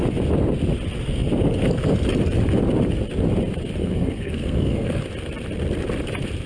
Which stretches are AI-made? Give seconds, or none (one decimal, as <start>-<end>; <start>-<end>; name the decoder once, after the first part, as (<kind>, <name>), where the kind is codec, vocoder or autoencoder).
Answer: 3.8-5.0 (codec, SNAC)

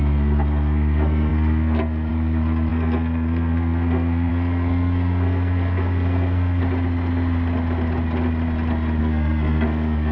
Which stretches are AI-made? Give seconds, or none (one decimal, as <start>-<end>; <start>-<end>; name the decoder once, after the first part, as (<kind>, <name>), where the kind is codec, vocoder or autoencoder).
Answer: 0.0-6.6 (codec, SNAC); 9.0-10.1

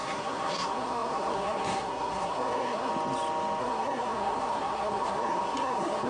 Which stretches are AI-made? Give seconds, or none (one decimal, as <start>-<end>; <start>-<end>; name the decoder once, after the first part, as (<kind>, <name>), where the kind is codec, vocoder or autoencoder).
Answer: 0.0-2.9 (codec, SNAC); 3.6-6.1

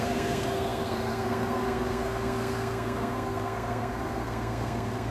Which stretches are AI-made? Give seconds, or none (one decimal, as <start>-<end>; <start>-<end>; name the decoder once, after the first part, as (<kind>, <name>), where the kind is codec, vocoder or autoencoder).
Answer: 0.0-5.1 (codec, SNAC)

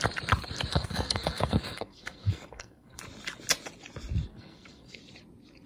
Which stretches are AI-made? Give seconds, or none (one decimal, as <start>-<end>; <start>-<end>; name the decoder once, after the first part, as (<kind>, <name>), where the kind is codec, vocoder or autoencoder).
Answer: 0.7-3.0 (codec, SNAC); 4.3-5.0

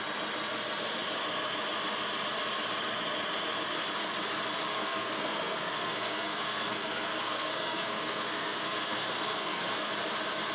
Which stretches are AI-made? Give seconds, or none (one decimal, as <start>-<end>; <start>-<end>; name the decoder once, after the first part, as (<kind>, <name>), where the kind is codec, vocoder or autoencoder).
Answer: 4.7-9.9 (codec, SNAC)